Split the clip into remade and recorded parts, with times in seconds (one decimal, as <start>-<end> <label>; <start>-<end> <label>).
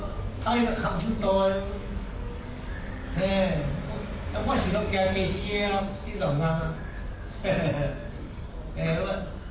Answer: 0.0-0.6 recorded; 0.6-3.3 remade; 3.3-4.4 recorded; 4.4-8.6 remade; 8.6-9.5 recorded